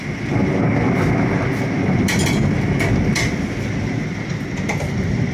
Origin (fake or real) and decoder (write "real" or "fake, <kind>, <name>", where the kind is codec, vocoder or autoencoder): real